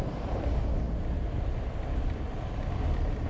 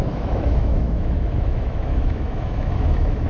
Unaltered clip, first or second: first